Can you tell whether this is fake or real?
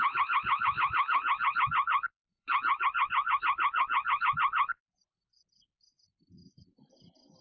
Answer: fake